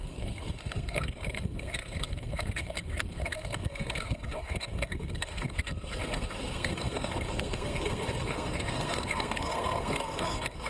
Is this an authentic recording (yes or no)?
no